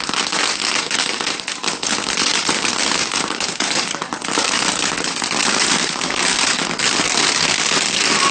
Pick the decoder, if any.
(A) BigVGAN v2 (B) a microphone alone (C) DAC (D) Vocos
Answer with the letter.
C